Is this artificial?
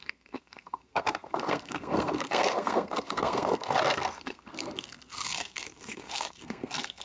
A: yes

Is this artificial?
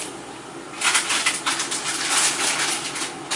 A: no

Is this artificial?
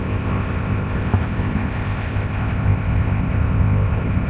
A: yes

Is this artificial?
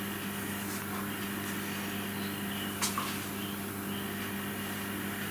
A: no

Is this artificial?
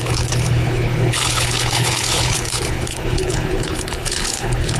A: yes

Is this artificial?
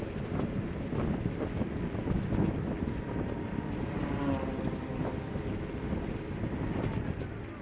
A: no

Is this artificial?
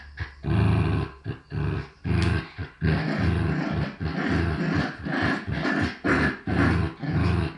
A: no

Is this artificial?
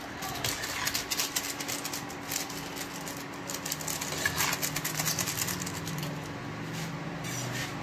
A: no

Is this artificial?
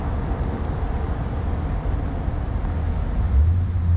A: no